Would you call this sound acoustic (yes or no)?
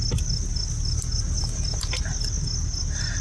yes